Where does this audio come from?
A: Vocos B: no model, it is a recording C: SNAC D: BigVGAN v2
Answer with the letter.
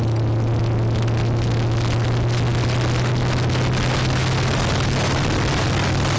B